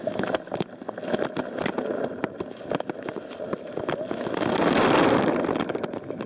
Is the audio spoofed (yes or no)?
no